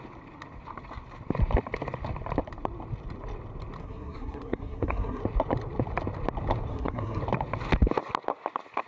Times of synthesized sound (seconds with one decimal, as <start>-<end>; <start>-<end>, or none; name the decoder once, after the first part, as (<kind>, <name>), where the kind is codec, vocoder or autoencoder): 3.8-5.2 (codec, SNAC); 6.7-7.2